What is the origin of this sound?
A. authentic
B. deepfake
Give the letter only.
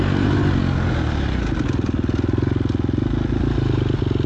A